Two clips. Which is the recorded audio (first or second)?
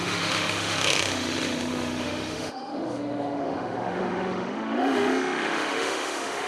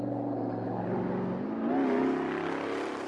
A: second